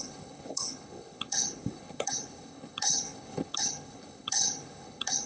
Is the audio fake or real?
fake